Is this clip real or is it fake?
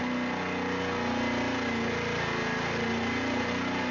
real